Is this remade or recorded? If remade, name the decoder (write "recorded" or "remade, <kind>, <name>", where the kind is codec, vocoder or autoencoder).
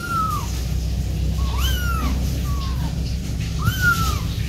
recorded